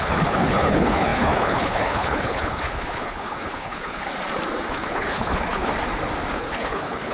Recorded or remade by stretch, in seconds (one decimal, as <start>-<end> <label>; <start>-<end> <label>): 0.0-4.0 remade; 4.0-4.7 recorded; 4.7-5.7 remade; 5.7-6.3 recorded; 6.3-7.1 remade